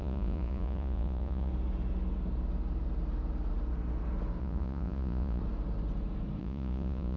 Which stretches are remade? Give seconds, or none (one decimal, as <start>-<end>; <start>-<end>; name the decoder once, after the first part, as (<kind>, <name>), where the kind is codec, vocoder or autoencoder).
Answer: 0.0-1.5 (vocoder, Vocos); 4.4-5.4; 6.4-7.2